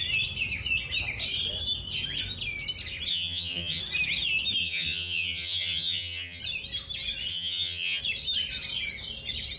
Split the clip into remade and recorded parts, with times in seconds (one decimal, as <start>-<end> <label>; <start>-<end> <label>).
0.0-3.1 recorded; 3.1-3.8 remade; 3.8-4.6 recorded; 4.6-6.4 remade; 6.4-7.3 recorded; 7.3-8.0 remade; 8.0-9.6 recorded